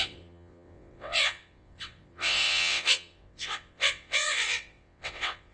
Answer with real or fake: fake